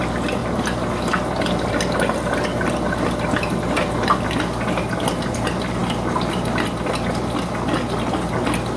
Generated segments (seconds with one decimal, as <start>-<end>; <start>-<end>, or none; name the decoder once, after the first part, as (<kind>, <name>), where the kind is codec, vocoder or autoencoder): none